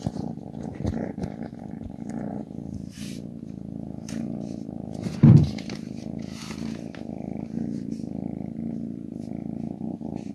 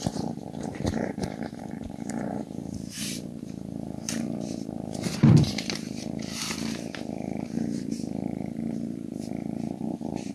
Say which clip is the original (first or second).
first